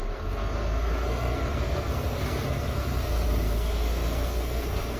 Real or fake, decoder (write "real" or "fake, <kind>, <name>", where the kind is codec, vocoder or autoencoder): fake, codec, SNAC